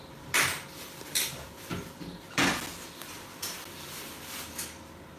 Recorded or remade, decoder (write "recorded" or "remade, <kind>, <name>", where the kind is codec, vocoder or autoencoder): recorded